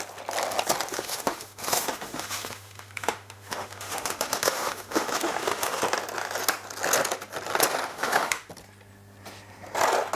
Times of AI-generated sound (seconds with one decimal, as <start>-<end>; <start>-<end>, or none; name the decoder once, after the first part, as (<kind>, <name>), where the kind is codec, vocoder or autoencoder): 0.9-5.8 (autoencoder, DAC-VAE); 7.9-8.5